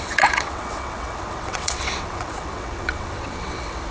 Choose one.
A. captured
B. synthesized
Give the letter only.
B